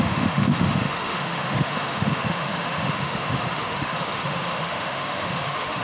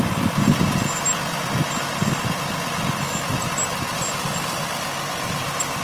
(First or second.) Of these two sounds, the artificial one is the first